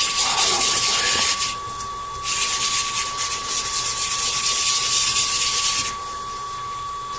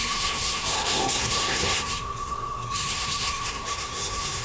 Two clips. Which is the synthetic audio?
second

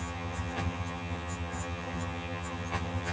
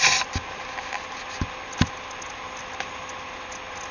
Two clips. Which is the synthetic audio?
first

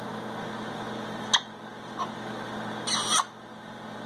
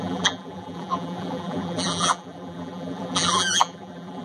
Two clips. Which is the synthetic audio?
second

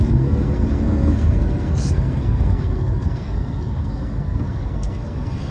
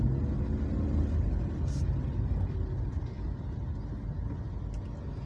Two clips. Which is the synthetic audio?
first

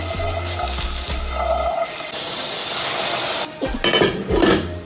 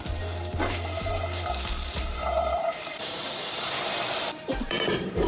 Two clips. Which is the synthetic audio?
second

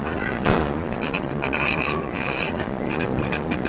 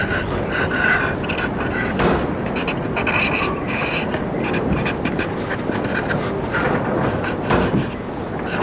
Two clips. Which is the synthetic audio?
first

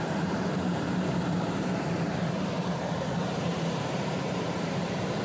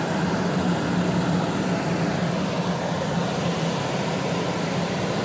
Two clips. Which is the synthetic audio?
first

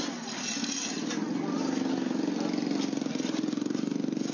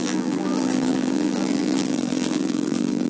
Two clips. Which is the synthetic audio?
second